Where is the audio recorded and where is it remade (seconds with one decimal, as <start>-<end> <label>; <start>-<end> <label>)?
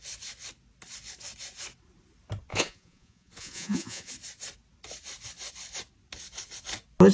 0.0-2.5 recorded; 2.5-4.1 remade; 4.1-7.1 recorded